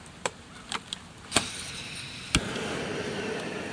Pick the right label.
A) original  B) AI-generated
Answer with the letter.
A